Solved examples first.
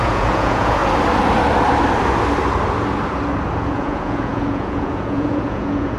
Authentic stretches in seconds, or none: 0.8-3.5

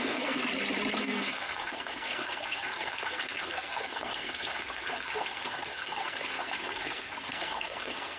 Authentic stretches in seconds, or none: 0.4-1.0

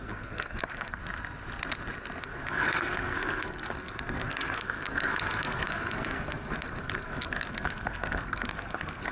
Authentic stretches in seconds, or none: 1.0-2.2

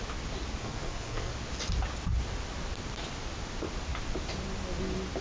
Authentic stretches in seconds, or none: 0.0-0.6; 1.3-5.2